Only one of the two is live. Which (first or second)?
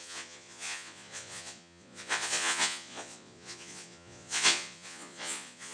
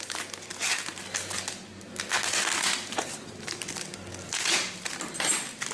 second